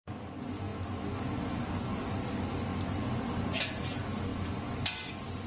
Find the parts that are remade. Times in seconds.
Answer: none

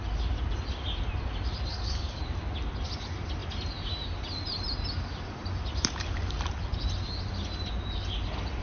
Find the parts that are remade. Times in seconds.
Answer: 1.7-2.2 (codec, DAC)

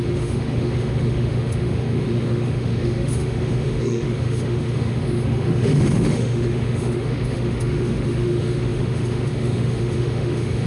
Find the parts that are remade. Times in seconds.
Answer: 0.0-10.7 (autoencoder, DAC-VAE)